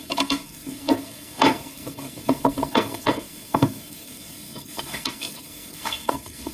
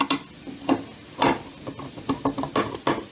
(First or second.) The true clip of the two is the second